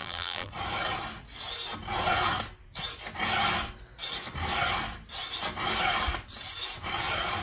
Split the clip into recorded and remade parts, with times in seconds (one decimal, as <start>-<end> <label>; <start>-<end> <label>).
0.0-0.5 remade; 0.5-7.4 recorded